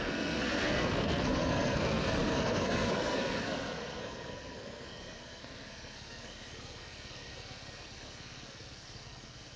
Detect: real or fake fake